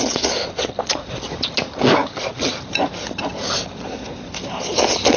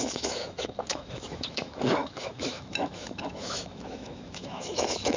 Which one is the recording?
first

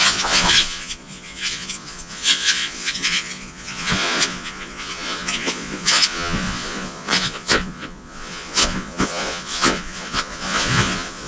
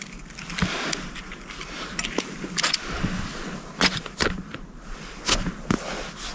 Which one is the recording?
second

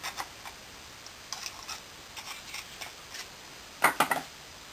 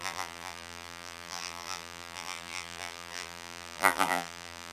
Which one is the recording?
first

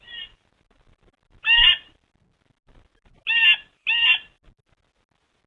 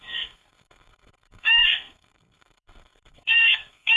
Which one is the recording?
first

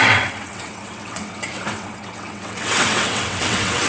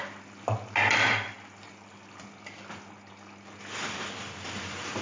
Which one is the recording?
second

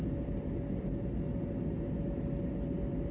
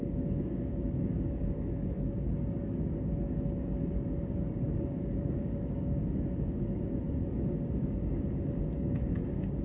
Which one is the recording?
first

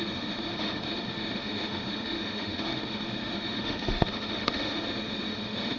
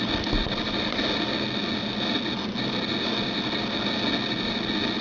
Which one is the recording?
second